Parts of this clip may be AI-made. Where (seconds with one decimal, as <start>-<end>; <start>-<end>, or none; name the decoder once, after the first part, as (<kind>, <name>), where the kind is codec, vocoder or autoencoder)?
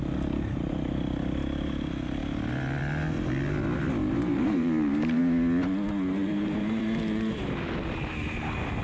4.0-5.2 (vocoder, BigVGAN v2); 6.2-7.5